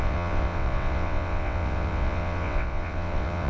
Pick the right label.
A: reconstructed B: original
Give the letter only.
A